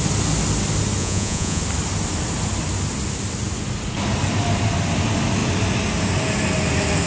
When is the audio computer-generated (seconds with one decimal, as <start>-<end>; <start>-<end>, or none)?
1.0-1.6

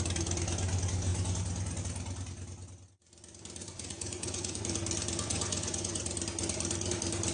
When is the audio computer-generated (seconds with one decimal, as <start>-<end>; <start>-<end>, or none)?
3.6-4.6; 5.3-6.0